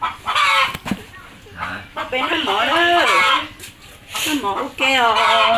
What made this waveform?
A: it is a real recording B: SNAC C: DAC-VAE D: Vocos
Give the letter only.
A